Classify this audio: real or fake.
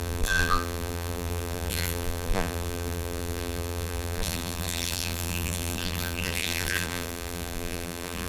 fake